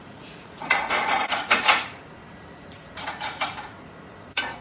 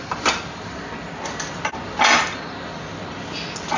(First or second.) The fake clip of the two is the first